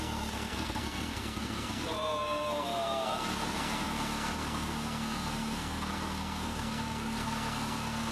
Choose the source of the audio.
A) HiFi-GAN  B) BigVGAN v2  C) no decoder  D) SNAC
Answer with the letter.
D